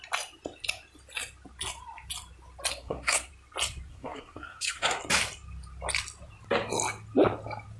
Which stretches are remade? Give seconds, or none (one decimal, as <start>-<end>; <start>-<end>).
2.7-3.3; 3.9-5.0